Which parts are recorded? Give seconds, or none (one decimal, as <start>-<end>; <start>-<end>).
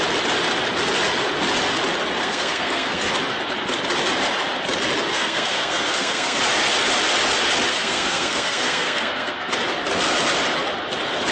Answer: 0.0-2.2; 3.1-5.1; 6.4-7.7; 9.5-11.3